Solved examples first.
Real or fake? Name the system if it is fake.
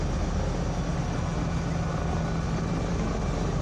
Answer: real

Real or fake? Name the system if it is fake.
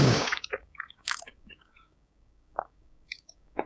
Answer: fake, codec, DAC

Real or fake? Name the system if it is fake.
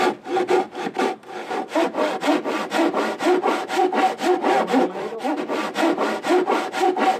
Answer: real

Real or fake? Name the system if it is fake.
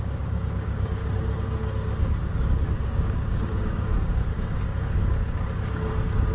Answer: fake, codec, DAC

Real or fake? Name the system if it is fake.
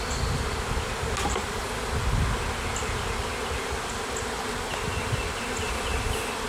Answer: real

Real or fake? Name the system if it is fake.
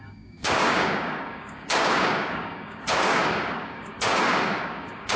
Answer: fake, codec, DAC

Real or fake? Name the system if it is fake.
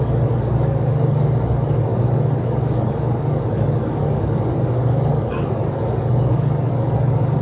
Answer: fake, codec, DAC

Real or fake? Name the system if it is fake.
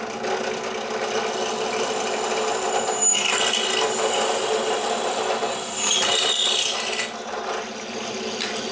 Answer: real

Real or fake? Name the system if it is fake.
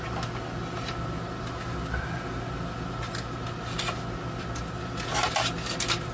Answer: real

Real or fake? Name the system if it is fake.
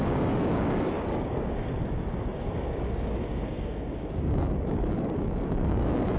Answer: fake, codec, DAC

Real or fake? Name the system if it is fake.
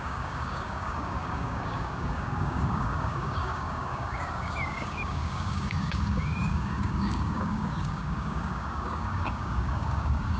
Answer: fake, codec, DAC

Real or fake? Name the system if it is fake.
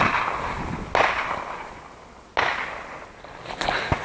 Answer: real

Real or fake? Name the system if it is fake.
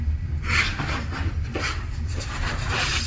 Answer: real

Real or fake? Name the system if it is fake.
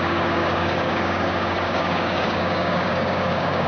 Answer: fake, codec, DAC